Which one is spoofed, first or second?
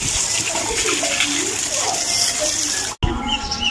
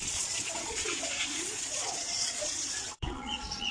second